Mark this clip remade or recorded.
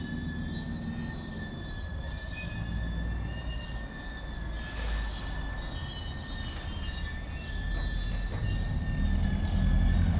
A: recorded